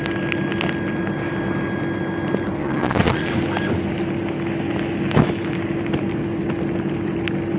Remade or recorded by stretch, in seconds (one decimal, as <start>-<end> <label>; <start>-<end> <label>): 0.0-2.6 recorded; 2.6-3.3 remade; 3.3-7.6 recorded